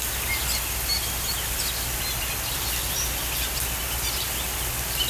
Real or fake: real